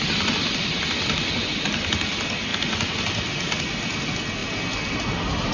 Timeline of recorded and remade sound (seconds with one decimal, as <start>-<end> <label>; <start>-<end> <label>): 0.0-5.5 recorded